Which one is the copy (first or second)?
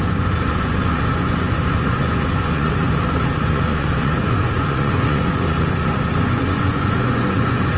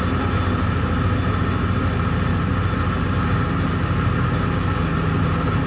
first